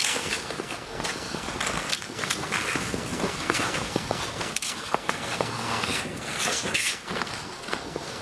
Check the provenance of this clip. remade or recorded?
remade